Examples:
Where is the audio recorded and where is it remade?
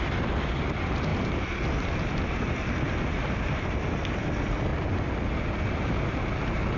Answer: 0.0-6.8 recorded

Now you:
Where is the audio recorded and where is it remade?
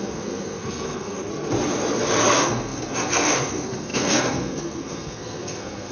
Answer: 0.0-1.3 remade; 1.3-2.3 recorded; 2.3-5.9 remade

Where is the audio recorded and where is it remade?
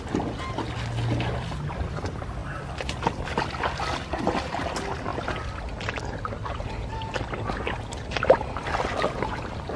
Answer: 0.0-9.8 recorded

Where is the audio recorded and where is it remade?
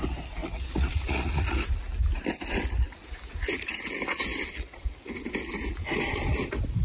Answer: 0.0-0.4 recorded; 0.4-1.7 remade; 1.7-6.8 recorded